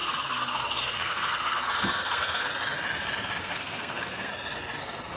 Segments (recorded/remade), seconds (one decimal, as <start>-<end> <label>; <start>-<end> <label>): 0.0-2.5 remade; 2.5-3.4 recorded; 3.4-4.3 remade; 4.3-4.8 recorded; 4.8-5.2 remade